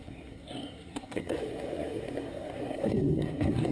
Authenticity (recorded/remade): remade